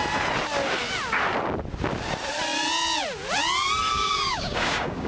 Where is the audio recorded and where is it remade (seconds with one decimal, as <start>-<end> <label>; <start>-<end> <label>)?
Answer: 0.0-3.9 recorded; 3.9-5.1 remade